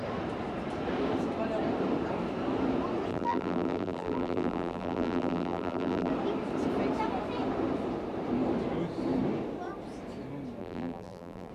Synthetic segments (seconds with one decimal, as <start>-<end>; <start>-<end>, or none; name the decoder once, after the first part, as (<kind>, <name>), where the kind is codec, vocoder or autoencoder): 3.1-6.1 (vocoder, BigVGAN v2); 10.6-11.5